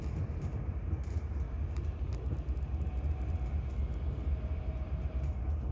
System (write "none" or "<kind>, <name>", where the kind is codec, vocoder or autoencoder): vocoder, BigVGAN v2